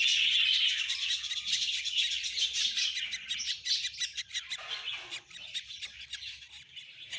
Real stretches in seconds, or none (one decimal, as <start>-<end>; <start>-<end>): 0.0-7.2